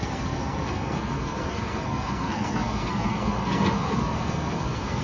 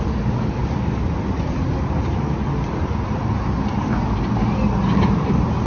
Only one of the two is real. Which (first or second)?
second